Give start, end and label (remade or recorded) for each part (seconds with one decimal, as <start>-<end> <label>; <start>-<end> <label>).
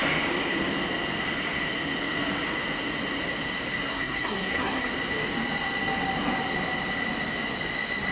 0.0-3.9 recorded; 3.9-4.9 remade; 4.9-8.1 recorded